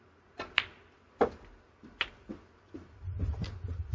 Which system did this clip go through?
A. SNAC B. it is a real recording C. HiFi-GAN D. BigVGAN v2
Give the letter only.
B